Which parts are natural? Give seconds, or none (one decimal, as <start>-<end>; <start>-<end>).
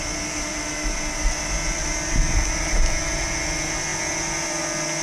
0.0-5.0